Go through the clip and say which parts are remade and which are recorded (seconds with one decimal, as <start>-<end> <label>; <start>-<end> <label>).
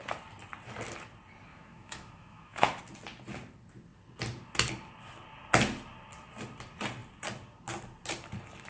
0.0-1.5 recorded; 1.5-2.8 remade; 2.8-8.7 recorded